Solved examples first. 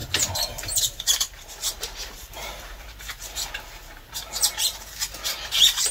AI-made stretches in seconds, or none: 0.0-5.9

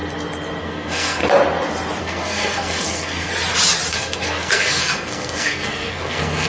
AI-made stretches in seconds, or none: 0.6-1.2; 2.0-3.3; 3.9-6.5

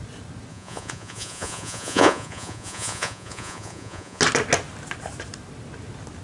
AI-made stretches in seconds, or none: 0.5-4.2

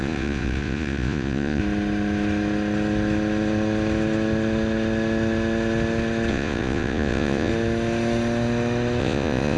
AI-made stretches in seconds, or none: 0.0-1.6; 6.3-7.5; 9.0-9.6